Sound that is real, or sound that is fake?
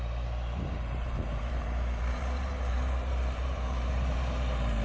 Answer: fake